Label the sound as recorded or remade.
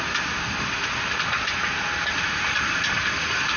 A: recorded